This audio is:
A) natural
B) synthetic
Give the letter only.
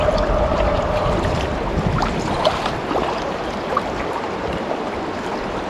B